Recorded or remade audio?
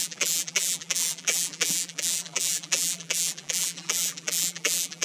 remade